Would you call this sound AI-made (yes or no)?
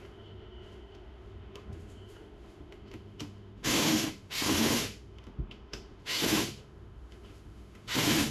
yes